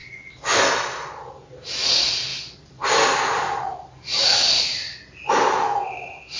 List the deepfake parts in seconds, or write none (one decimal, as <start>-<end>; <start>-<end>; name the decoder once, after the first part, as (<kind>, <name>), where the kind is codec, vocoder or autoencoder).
2.3-5.3 (vocoder, BigVGAN v2)